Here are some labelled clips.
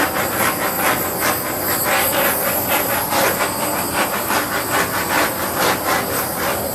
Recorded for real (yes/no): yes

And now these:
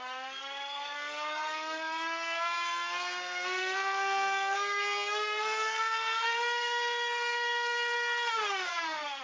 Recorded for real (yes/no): no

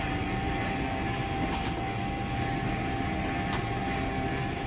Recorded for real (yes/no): yes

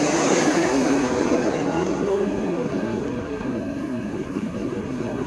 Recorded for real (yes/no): no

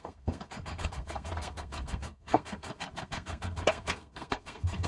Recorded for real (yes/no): no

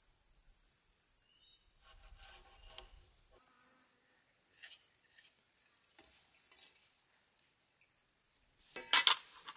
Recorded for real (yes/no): yes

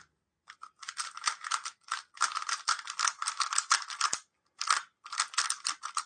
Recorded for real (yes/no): yes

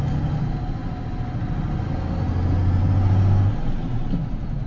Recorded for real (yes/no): yes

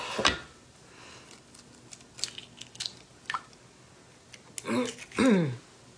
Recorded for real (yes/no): yes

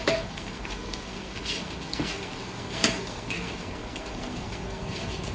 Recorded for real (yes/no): no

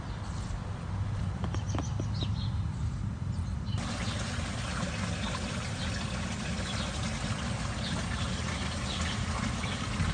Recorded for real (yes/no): yes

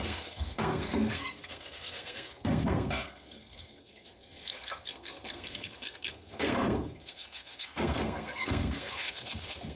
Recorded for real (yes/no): no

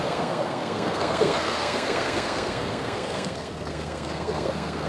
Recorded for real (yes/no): no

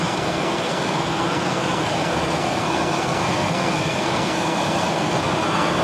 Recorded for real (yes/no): no